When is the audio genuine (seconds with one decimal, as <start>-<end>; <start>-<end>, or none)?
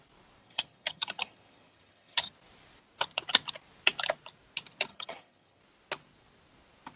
0.0-0.4; 2.3-4.9; 5.6-7.0